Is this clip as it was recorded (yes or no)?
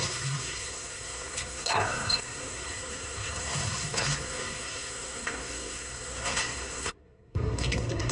no